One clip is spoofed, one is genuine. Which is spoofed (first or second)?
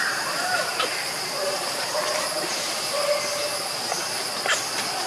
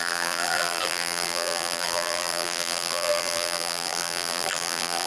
second